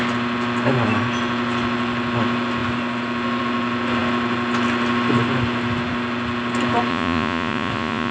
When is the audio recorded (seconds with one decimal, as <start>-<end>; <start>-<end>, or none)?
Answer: 0.0-6.9